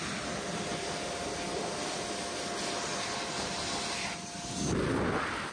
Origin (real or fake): real